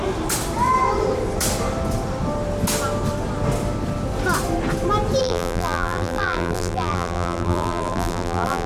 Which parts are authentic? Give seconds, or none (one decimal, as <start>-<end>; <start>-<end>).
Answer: 0.0-5.2